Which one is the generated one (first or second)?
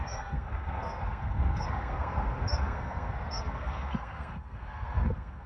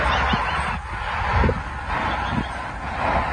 first